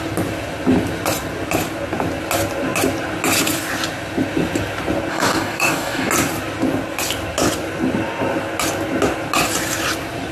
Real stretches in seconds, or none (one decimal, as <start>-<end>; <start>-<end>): 0.0-5.1; 6.1-10.3